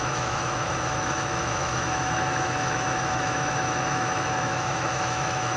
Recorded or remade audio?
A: remade